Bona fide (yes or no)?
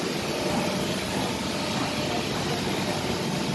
yes